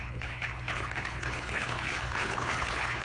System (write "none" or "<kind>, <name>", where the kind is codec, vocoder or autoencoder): codec, HILCodec